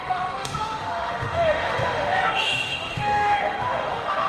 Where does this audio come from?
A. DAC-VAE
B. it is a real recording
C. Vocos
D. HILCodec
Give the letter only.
A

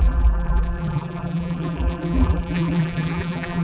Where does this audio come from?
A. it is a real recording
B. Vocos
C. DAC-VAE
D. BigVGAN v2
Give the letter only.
D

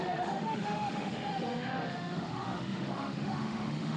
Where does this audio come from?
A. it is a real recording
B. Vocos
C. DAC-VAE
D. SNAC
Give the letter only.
C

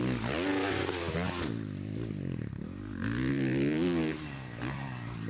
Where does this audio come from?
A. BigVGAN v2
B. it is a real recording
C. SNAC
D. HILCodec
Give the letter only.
B